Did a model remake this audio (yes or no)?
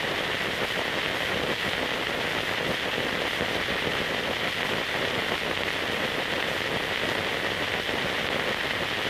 no